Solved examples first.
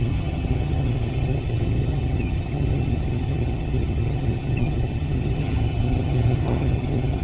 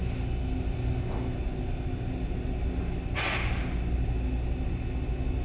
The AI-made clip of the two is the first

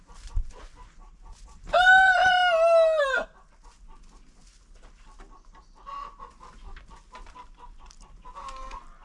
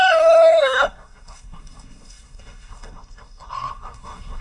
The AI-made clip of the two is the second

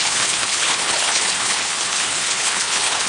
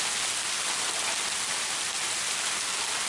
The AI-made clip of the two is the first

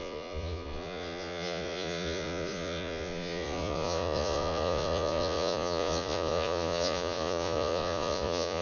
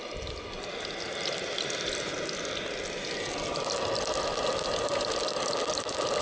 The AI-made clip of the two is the first